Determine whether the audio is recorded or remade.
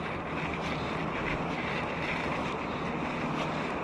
recorded